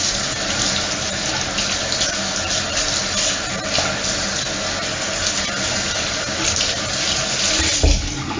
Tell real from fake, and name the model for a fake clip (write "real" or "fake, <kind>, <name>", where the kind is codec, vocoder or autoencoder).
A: real